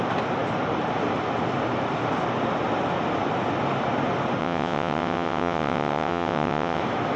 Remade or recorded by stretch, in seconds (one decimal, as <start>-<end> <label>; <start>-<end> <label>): 0.0-4.4 recorded; 4.4-6.8 remade; 6.8-7.2 recorded